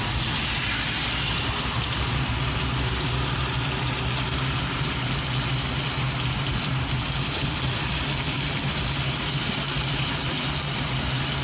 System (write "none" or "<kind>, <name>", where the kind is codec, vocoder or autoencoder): none